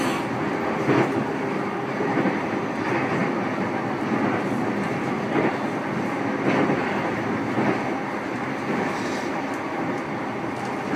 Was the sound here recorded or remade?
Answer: recorded